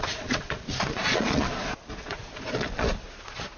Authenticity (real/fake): fake